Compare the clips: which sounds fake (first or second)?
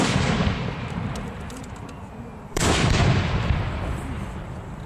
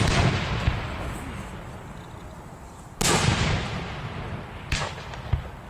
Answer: first